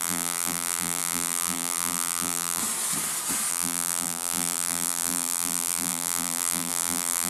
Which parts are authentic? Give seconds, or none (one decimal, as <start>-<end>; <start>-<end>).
2.6-3.5